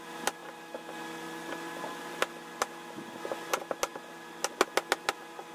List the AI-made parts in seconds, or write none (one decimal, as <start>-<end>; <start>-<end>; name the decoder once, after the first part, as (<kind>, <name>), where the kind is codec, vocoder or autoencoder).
none